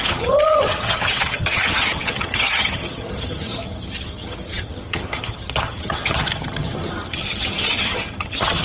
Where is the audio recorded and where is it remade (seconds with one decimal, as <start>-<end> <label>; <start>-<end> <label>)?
0.0-8.6 remade

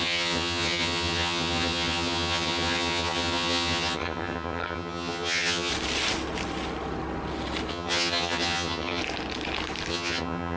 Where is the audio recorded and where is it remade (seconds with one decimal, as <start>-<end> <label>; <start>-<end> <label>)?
0.0-5.7 remade; 5.7-7.7 recorded; 7.7-9.0 remade; 9.0-9.9 recorded; 9.9-10.6 remade